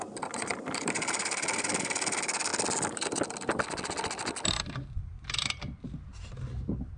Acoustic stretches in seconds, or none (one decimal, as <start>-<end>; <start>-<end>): 2.5-5.1; 6.1-7.0